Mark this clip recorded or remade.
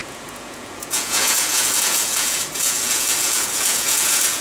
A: remade